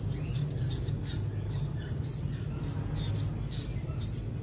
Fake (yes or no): no